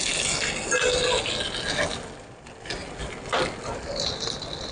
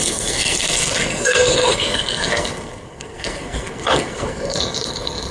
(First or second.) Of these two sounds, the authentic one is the first